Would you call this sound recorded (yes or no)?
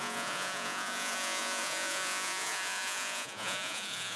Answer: no